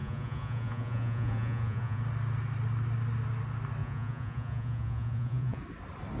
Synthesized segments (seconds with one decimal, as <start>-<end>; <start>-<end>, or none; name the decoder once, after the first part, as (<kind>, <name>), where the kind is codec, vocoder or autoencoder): 0.0-2.0 (vocoder, Vocos); 3.8-5.6